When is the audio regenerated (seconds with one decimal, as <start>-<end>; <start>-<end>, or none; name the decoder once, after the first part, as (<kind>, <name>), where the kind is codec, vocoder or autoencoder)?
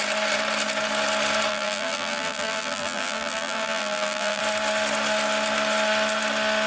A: 1.5-4.4 (vocoder, BigVGAN v2)